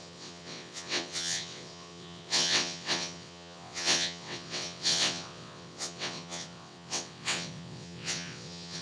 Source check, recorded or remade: remade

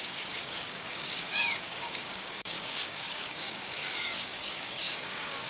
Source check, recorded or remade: remade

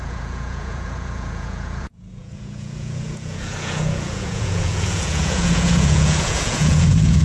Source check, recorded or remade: remade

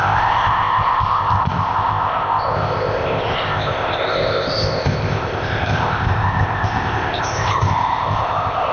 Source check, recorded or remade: remade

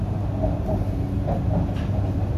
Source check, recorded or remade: recorded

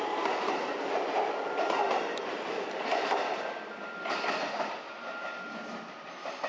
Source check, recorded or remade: recorded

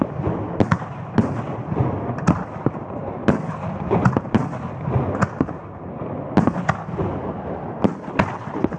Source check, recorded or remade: recorded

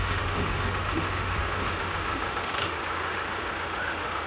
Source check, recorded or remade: remade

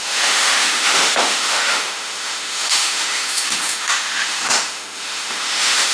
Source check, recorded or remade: remade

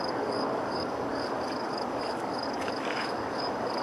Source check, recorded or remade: remade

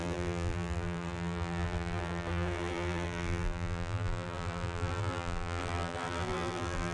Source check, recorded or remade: remade